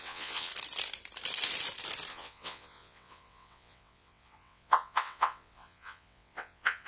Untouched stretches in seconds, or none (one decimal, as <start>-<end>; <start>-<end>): 0.5-2.1